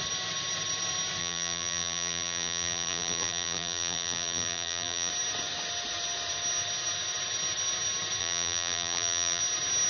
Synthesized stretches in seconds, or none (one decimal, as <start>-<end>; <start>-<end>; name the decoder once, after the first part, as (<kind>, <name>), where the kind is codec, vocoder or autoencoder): 1.2-5.1 (vocoder, BigVGAN v2); 8.2-9.4

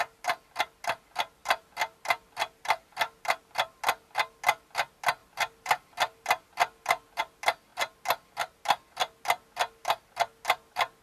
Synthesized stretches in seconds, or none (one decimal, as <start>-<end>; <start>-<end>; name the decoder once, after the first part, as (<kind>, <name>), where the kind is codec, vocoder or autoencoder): none

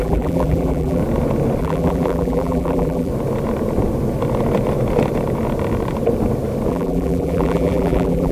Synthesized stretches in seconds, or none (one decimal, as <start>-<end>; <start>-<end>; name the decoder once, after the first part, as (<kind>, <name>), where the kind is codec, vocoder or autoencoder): 0.0-1.0 (vocoder, BigVGAN v2); 1.6-3.1; 6.7-8.3

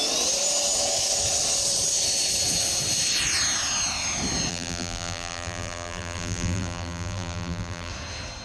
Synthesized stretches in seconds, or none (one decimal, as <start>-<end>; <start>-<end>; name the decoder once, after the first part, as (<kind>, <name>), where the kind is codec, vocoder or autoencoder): 4.5-7.9 (vocoder, BigVGAN v2)

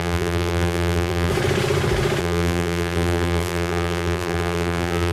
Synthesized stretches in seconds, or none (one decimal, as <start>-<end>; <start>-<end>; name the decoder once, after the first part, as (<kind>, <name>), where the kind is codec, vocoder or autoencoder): 0.0-1.3 (vocoder, BigVGAN v2); 2.2-5.1

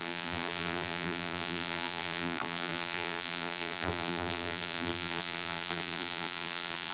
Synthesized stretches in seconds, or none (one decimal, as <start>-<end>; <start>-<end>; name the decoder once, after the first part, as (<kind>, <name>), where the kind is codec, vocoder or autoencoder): 0.0-6.9 (vocoder, BigVGAN v2)